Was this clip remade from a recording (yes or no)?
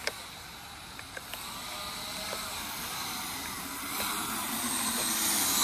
no